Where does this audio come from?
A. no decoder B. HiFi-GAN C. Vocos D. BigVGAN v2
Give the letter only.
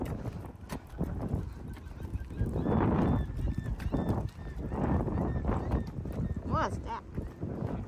A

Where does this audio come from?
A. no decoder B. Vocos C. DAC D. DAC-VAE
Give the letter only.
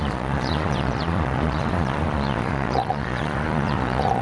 B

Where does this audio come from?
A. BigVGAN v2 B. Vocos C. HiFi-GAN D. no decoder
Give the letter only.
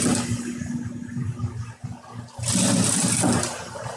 D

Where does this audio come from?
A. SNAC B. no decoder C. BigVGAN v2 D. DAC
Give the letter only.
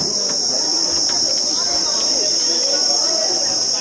C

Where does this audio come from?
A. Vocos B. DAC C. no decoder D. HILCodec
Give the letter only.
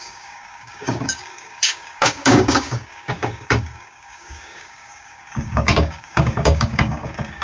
B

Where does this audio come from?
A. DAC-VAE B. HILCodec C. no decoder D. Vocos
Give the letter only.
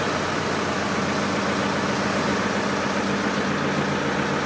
C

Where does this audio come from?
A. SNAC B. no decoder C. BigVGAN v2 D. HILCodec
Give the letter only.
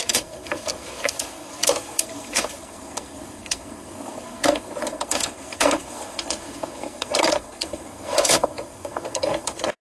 A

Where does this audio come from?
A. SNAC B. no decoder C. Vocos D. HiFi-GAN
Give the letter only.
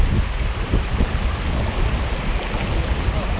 B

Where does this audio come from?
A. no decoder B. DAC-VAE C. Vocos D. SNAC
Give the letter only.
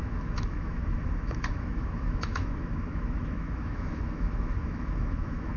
B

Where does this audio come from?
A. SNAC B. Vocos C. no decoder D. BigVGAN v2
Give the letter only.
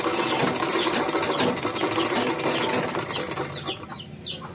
C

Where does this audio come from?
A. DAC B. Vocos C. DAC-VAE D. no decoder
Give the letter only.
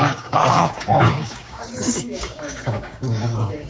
A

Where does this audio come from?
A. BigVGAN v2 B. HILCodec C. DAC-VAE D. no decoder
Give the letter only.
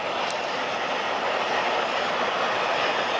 D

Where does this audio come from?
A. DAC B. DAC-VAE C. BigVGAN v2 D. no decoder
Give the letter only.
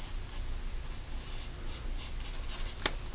D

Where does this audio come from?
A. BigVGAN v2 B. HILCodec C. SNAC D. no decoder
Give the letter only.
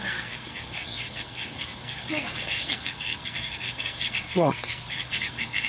C